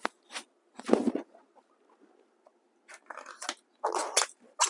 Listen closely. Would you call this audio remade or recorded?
recorded